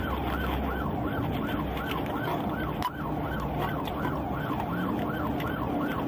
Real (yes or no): yes